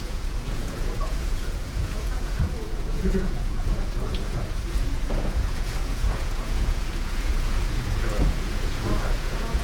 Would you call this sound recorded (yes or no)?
no